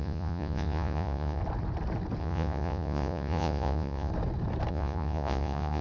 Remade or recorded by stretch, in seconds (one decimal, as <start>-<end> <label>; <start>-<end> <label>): 0.0-1.4 remade; 1.4-2.2 recorded; 2.2-4.1 remade; 4.1-4.7 recorded; 4.7-5.8 remade